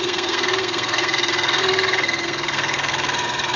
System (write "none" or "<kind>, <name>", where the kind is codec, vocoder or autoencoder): codec, SNAC